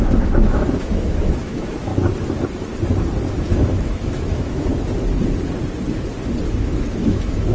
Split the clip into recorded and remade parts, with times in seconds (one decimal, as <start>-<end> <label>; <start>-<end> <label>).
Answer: 0.0-1.9 remade; 1.9-3.3 recorded; 3.3-4.7 remade; 4.7-6.5 recorded; 6.5-7.5 remade